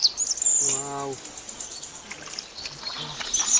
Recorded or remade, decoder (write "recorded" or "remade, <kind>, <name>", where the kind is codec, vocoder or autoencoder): recorded